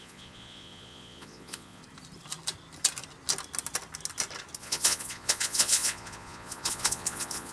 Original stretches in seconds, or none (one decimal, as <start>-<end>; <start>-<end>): 1.8-4.6